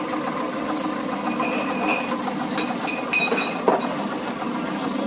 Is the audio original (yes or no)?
yes